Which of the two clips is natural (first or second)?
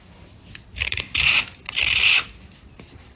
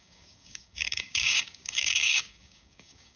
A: first